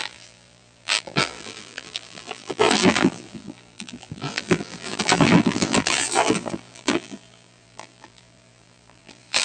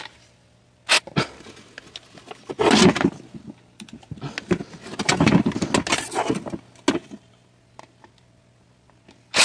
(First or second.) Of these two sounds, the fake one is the first